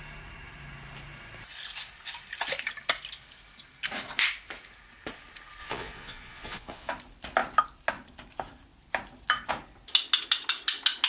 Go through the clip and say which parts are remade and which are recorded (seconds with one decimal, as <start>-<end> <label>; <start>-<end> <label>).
0.0-5.6 recorded; 5.6-6.9 remade; 6.9-11.1 recorded